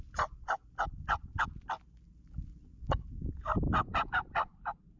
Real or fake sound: real